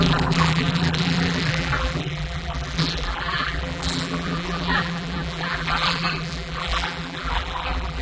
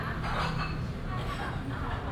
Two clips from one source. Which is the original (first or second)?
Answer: second